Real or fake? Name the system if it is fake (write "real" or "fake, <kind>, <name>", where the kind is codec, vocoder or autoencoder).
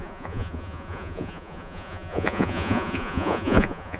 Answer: fake, vocoder, Vocos